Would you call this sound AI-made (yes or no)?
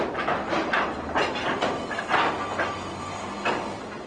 no